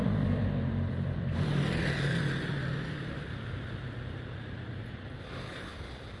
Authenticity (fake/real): real